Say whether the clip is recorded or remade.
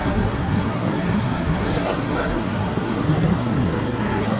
remade